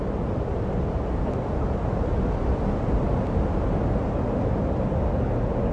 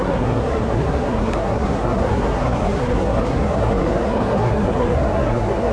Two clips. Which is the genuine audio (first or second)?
first